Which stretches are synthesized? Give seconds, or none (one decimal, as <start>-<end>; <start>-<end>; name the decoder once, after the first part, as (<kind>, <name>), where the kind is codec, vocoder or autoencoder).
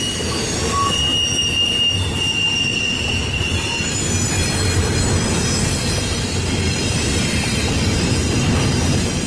1.1-3.7 (vocoder, BigVGAN v2)